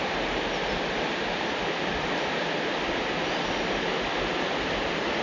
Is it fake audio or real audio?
real